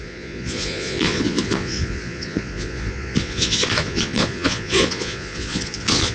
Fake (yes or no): yes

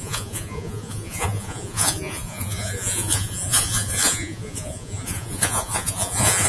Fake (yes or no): yes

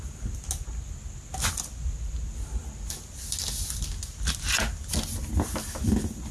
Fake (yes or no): no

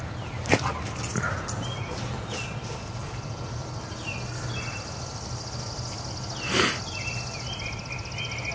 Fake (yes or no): no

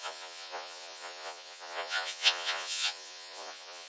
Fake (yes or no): yes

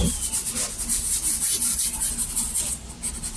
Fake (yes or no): no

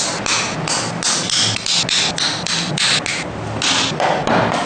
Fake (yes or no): no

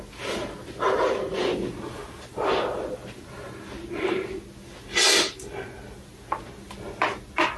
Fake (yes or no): no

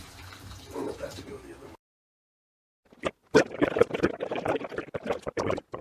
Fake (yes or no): no